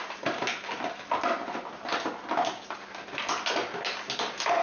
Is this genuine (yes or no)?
yes